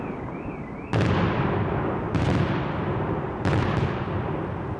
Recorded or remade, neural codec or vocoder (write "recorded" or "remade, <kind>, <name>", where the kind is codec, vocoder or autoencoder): recorded